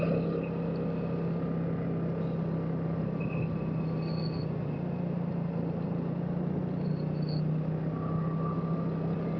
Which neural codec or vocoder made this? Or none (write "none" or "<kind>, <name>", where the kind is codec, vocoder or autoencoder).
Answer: none